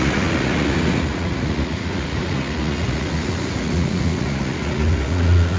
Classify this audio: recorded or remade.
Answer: remade